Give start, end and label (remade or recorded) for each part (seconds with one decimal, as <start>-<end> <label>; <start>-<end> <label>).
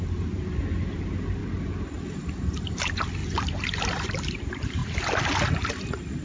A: 0.0-1.4 remade; 1.4-2.1 recorded; 2.1-3.2 remade; 3.2-3.9 recorded; 3.9-4.8 remade; 4.8-5.8 recorded; 5.8-6.2 remade